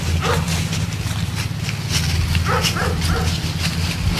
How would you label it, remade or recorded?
recorded